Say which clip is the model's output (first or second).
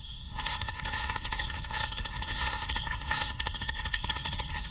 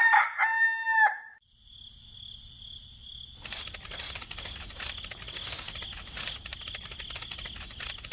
first